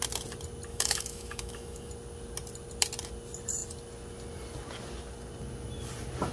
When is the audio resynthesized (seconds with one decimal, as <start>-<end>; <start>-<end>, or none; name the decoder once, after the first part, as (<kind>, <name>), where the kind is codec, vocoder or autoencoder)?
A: 0.7-1.9 (autoencoder, DAC-VAE)